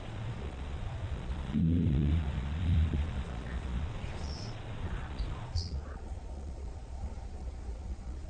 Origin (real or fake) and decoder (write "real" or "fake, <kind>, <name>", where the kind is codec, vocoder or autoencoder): fake, vocoder, Vocos